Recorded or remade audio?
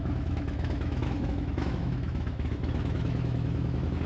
remade